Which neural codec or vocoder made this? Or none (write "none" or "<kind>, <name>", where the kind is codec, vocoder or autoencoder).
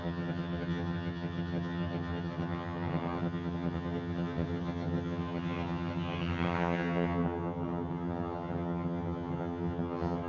vocoder, HiFi-GAN